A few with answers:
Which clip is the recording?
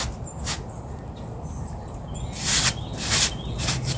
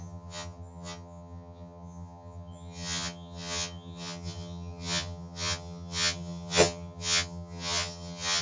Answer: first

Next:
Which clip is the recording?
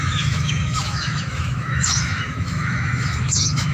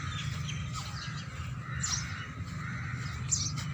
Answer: second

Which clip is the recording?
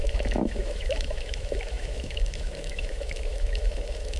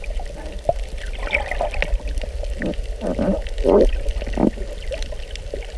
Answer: second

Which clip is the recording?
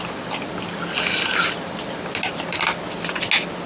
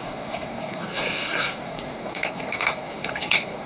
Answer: first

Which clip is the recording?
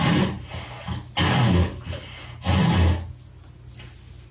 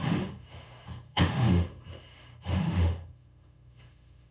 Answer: first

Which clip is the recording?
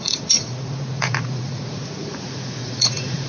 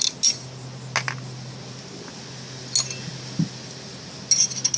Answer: second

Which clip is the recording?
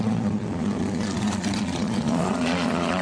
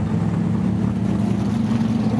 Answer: second